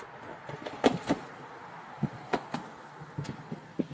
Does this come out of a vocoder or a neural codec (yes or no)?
no